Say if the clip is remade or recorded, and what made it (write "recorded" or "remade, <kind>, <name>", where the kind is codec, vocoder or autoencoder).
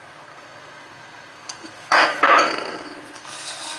remade, codec, SNAC